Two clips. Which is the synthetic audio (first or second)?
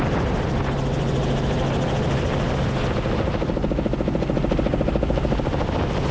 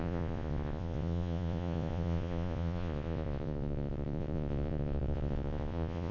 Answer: second